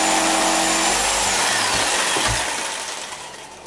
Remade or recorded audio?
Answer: recorded